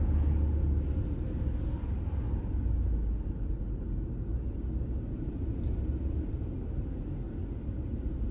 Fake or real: real